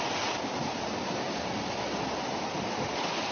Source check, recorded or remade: recorded